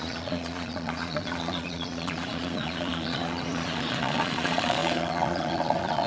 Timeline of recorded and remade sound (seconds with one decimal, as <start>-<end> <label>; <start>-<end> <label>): 0.0-6.1 remade

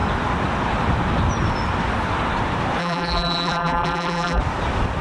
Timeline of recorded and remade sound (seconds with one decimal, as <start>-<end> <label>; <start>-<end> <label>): 0.0-2.8 recorded; 2.8-4.4 remade; 4.4-5.0 recorded